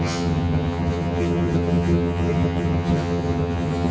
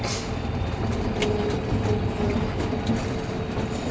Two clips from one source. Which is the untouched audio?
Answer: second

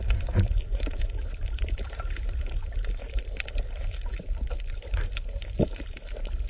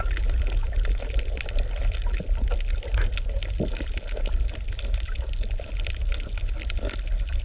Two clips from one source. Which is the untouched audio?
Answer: second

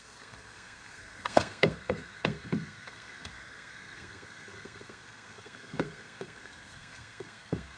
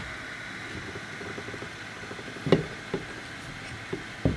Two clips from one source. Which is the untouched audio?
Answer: second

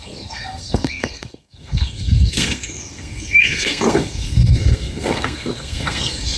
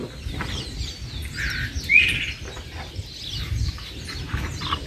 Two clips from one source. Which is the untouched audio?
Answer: second